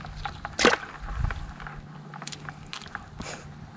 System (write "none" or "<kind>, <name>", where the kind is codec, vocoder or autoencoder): none